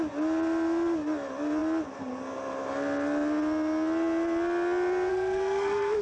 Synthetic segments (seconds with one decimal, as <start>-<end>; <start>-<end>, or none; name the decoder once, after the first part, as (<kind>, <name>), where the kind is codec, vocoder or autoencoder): 5.1-6.0 (codec, SNAC)